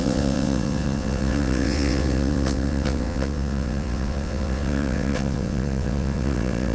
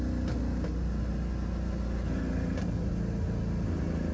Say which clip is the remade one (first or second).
first